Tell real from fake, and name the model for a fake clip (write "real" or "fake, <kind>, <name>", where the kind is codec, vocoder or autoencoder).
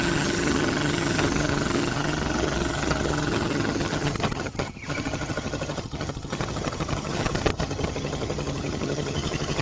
fake, vocoder, HiFi-GAN